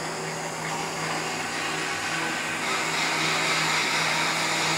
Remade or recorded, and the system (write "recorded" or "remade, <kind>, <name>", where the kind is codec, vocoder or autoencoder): recorded